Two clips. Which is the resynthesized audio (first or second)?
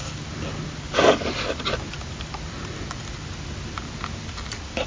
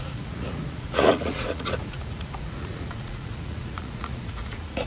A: second